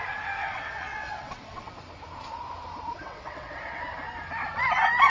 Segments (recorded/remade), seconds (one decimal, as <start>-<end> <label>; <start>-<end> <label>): 0.0-0.4 recorded; 0.4-1.7 remade; 1.7-3.0 recorded; 3.0-3.8 remade; 3.8-5.1 recorded